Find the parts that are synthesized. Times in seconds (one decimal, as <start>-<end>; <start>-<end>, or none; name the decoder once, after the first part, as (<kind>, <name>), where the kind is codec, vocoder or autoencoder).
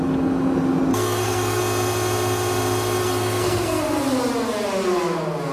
0.9-1.6 (codec, SNAC); 3.0-3.8